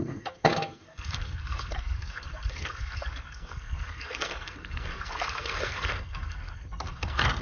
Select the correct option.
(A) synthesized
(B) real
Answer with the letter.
A